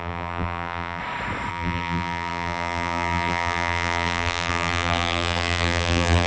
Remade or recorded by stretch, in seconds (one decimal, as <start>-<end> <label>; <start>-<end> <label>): 0.0-1.0 remade; 1.0-1.5 recorded; 1.5-6.3 remade